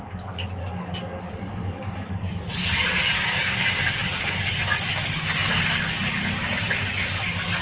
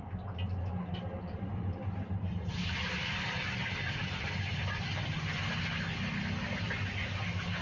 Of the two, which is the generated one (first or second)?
first